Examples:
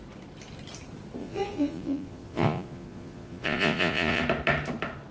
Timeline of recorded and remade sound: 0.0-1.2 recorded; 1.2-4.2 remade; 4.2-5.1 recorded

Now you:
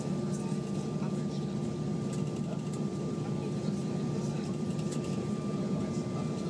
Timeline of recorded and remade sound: 0.0-1.9 recorded; 1.9-5.8 remade; 5.8-6.5 recorded

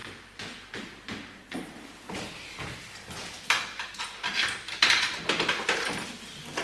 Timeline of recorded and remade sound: 0.0-4.0 remade; 4.0-6.6 recorded

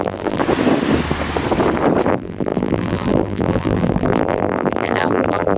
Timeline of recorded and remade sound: 0.0-0.4 remade; 0.4-2.1 recorded; 2.1-5.6 remade